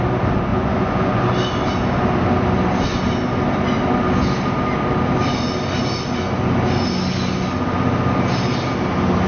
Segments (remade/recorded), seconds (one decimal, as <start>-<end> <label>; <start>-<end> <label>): 0.0-0.5 recorded; 0.5-1.2 remade; 1.2-9.3 recorded